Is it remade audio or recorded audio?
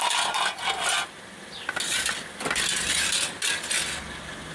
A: recorded